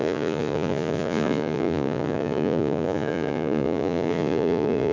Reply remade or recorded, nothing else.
remade